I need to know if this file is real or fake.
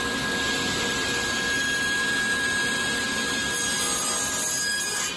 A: real